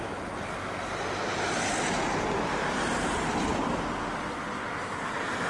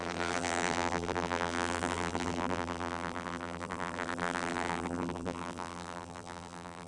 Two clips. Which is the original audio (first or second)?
first